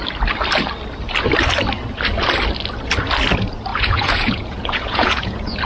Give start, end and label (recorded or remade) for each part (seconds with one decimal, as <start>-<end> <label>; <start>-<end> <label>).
0.0-3.7 recorded; 3.7-5.7 remade